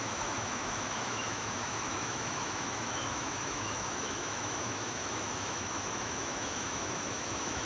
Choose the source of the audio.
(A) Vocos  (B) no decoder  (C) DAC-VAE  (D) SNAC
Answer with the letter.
C